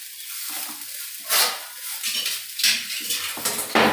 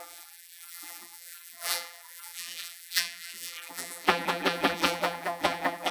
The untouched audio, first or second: first